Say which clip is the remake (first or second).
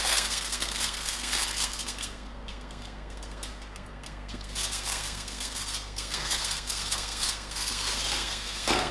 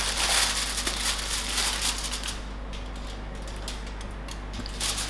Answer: first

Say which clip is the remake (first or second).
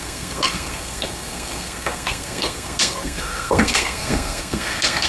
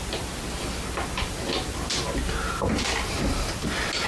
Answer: first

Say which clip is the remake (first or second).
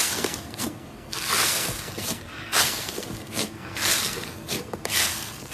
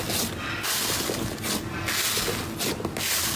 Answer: first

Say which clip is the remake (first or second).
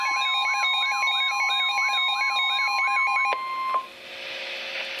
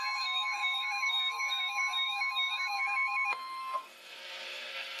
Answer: second